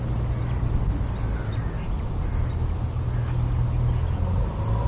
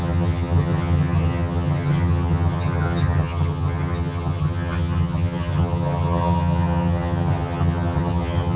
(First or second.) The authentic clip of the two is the first